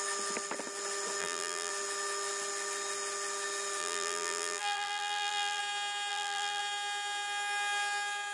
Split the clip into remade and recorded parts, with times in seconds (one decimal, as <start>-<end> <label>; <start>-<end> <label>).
0.0-1.2 recorded; 1.2-1.7 remade; 1.7-3.8 recorded; 3.8-5.6 remade; 5.6-6.1 recorded; 6.1-6.6 remade; 6.6-8.3 recorded